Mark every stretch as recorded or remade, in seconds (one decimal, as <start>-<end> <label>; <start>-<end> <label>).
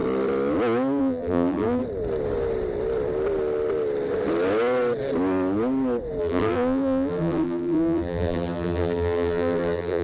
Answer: 0.0-1.0 recorded; 1.0-1.8 remade; 1.8-6.2 recorded; 6.2-10.0 remade